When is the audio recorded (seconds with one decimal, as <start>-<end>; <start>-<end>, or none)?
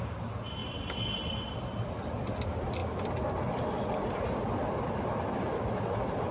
0.0-6.3